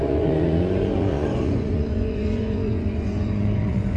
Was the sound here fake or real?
fake